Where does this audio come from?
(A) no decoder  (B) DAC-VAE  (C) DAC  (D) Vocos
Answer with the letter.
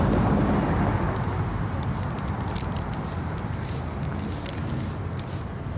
A